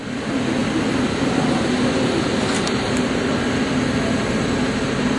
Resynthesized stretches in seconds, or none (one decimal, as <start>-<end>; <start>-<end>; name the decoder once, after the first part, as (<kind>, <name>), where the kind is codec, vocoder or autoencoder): none

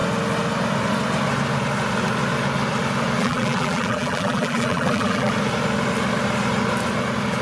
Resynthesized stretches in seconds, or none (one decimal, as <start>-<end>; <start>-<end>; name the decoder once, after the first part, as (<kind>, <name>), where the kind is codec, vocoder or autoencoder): 3.2-5.3 (vocoder, BigVGAN v2)

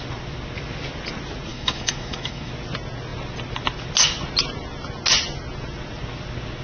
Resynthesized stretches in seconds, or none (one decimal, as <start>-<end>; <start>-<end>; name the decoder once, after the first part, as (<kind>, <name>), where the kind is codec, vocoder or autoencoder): 1.5-2.5 (autoencoder, DAC-VAE)